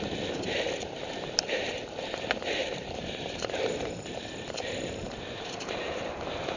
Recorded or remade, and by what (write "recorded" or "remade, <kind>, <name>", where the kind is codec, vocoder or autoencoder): remade, vocoder, BigVGAN v2